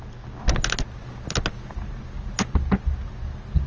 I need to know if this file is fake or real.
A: real